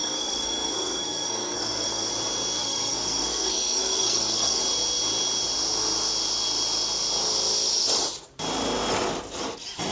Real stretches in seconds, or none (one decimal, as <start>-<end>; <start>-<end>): 2.1-2.6; 4.6-9.9